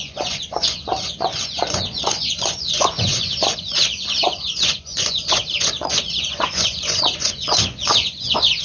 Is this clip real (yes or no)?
no